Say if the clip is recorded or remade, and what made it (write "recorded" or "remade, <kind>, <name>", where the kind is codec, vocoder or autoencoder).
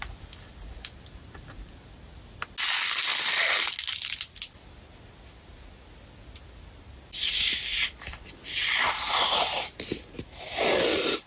recorded